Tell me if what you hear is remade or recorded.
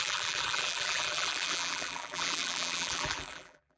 remade